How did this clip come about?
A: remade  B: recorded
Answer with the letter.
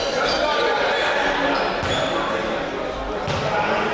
B